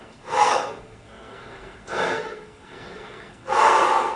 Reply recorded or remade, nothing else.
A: remade